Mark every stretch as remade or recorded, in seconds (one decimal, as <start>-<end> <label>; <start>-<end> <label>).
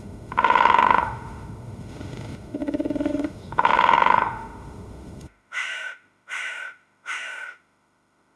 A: 0.0-8.4 remade